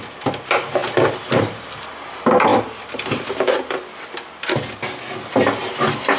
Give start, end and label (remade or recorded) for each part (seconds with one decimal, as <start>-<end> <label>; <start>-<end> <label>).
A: 0.0-6.2 recorded